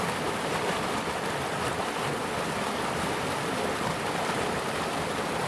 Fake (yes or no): no